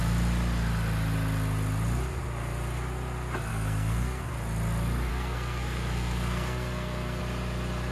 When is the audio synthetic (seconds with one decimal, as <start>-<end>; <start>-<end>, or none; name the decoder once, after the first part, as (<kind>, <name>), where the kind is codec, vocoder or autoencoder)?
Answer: 3.5-4.3 (codec, SNAC); 5.1-7.2